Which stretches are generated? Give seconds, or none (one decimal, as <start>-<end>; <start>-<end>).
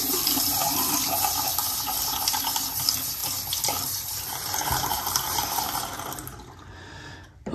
none